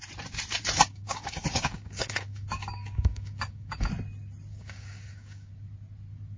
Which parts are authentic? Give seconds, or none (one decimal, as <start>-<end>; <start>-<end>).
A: 0.0-0.9; 3.9-4.5; 5.5-6.4